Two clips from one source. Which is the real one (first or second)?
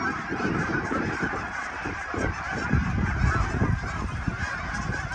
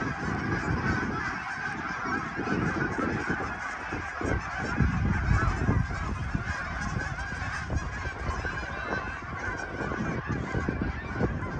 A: second